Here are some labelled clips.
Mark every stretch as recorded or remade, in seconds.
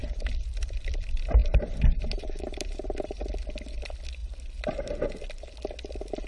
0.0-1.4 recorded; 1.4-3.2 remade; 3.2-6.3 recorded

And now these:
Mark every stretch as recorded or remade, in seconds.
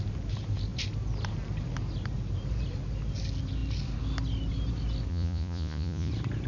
0.0-5.1 recorded; 5.1-6.1 remade; 6.1-6.5 recorded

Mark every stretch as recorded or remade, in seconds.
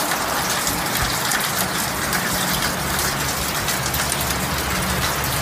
0.0-5.4 recorded